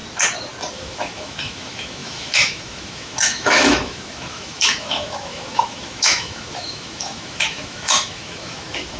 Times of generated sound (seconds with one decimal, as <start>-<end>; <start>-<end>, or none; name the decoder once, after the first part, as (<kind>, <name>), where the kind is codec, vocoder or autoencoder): 0.7-9.0 (autoencoder, DAC-VAE)

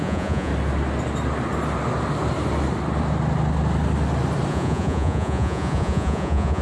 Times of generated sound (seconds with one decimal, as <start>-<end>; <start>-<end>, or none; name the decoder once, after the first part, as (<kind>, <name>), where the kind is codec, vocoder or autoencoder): 0.0-0.5 (vocoder, Vocos); 4.5-6.6